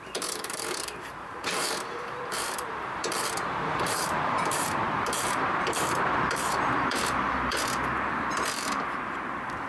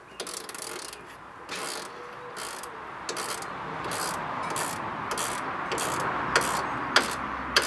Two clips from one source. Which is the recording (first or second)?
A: second